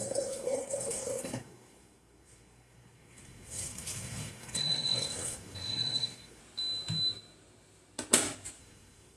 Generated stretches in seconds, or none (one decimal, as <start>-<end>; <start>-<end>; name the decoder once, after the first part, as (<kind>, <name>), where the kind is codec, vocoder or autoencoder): 0.0-6.4 (codec, SNAC); 8.6-9.2